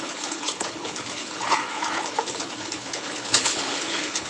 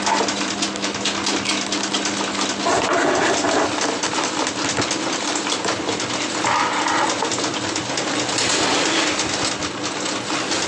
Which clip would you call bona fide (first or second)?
second